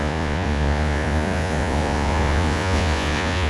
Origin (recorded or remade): remade